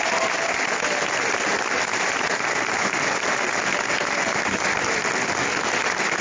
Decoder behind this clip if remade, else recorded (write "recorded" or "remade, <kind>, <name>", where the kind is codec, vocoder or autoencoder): recorded